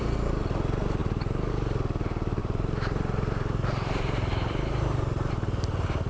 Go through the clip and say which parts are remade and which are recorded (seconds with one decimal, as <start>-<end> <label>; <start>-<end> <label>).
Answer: 0.0-1.0 recorded; 1.0-1.5 remade; 1.5-2.4 recorded; 2.4-5.3 remade; 5.3-6.1 recorded